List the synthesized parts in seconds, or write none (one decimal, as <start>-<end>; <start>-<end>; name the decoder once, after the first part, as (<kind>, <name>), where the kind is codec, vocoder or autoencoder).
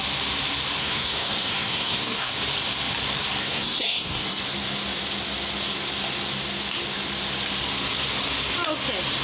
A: 0.8-2.3 (codec, SNAC); 3.4-4.4